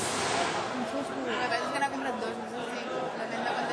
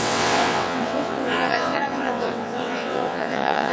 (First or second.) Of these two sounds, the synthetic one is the second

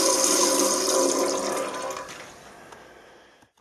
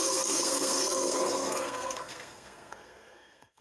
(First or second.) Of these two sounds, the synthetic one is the second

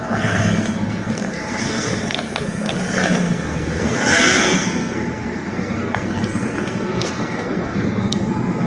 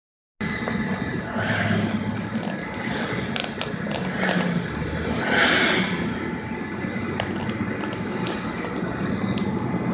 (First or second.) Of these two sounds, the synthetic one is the first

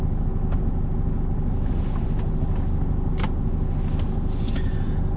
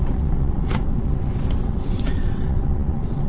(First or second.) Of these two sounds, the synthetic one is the second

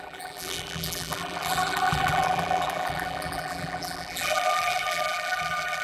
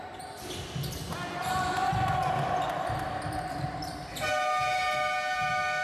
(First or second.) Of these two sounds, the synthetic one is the first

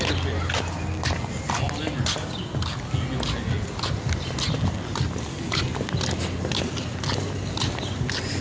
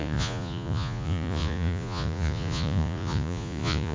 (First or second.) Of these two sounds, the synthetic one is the second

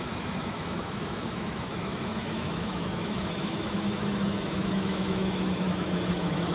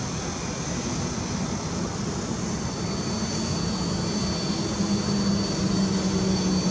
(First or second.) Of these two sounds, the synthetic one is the first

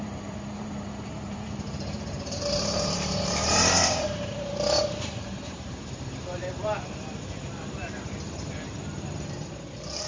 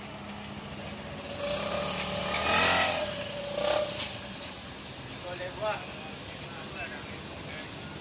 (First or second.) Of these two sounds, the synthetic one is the first